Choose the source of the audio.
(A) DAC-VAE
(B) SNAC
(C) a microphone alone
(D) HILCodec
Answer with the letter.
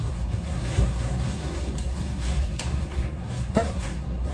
B